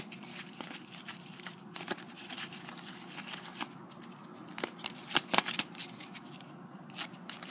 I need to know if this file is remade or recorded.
recorded